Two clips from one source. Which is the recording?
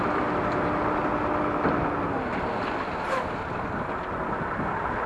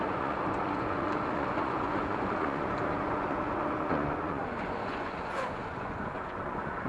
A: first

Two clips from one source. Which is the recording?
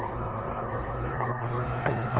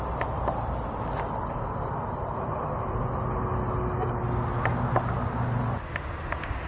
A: second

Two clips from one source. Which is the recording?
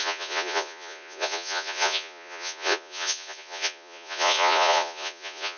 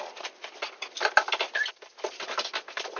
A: second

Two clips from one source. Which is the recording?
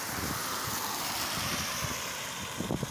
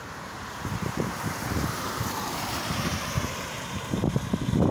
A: first